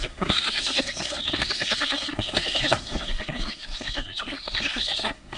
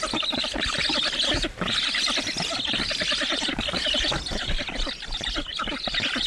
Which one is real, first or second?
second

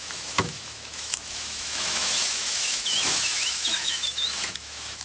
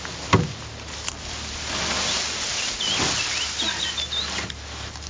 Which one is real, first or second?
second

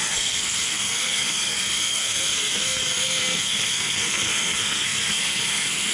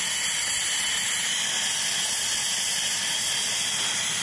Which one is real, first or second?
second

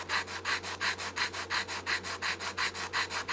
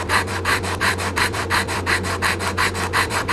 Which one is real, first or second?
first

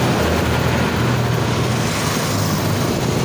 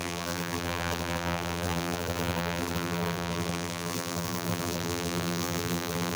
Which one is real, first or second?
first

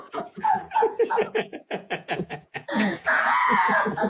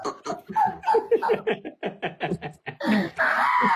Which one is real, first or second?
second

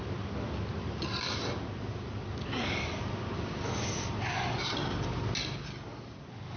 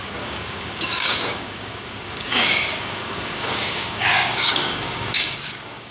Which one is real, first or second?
first